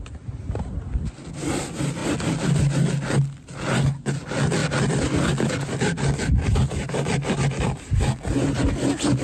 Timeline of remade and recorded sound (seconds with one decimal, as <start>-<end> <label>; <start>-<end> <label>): 0.0-9.2 recorded